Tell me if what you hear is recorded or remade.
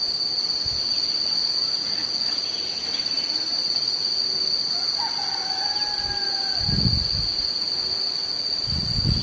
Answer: recorded